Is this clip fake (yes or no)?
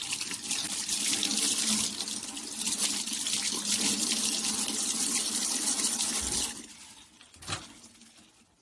no